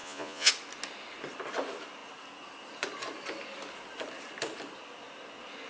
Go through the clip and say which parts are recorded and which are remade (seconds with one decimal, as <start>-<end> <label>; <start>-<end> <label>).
0.0-0.5 remade; 0.5-5.7 recorded